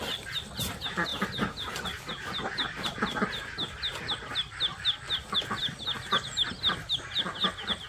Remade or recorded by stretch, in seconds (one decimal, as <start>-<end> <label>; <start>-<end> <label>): 0.0-7.9 recorded

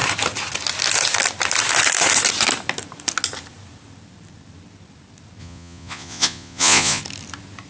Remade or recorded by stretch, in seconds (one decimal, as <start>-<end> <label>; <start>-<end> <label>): 0.0-5.4 recorded; 5.4-7.0 remade; 7.0-7.7 recorded

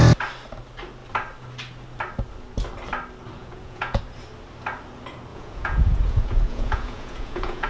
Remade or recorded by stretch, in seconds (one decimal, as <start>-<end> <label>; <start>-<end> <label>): 0.0-3.4 recorded; 3.4-4.0 remade; 4.0-5.3 recorded; 5.3-7.7 remade

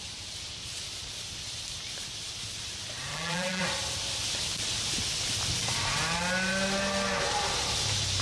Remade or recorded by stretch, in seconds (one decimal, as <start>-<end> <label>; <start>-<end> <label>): 0.0-3.1 recorded; 3.1-3.6 remade; 3.6-8.2 recorded

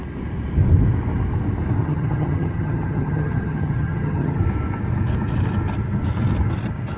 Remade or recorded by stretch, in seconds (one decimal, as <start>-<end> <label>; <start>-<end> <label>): 0.0-1.8 recorded; 1.8-4.4 remade; 4.4-7.0 recorded

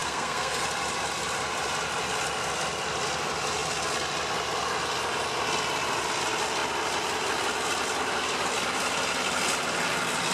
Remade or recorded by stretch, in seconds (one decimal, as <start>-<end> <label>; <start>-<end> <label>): 0.0-0.6 remade; 0.6-10.3 recorded